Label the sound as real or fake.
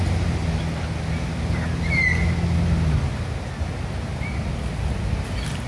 real